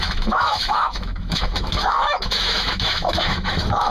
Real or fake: fake